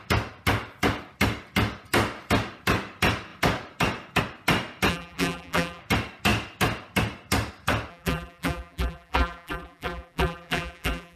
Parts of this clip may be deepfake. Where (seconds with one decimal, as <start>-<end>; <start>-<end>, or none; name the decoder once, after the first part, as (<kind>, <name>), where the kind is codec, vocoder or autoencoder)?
4.9-5.8 (vocoder, BigVGAN v2); 7.9-11.2